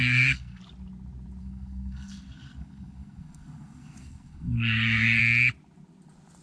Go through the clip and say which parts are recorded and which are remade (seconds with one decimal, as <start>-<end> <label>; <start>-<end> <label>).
0.0-0.6 remade; 0.6-1.4 recorded; 1.4-5.2 remade; 5.2-6.4 recorded